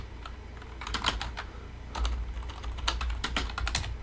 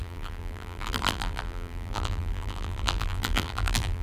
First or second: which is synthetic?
second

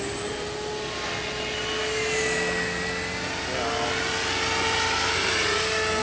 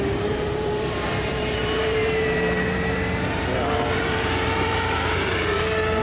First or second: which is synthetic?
second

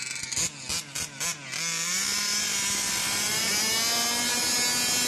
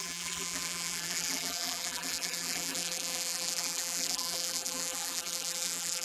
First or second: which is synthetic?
second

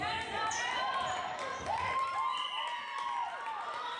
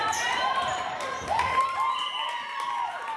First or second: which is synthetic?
second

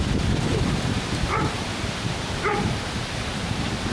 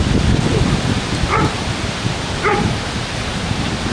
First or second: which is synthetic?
first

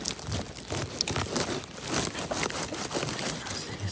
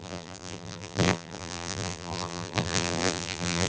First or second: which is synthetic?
second